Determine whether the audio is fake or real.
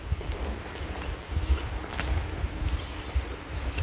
real